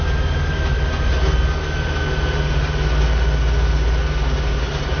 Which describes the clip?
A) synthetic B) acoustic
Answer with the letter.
B